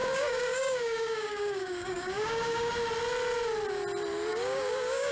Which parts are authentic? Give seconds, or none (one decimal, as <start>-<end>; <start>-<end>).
2.7-4.3